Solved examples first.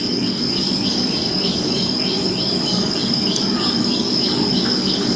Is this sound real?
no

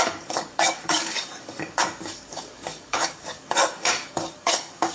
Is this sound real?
no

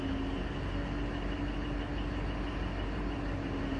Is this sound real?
yes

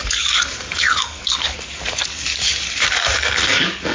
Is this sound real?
no